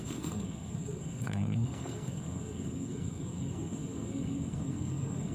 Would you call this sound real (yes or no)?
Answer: no